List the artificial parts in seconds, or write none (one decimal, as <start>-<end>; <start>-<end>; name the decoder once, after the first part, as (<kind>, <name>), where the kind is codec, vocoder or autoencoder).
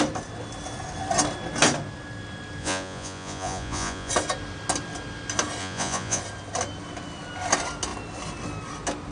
2.6-4.1 (vocoder, Vocos); 5.6-6.2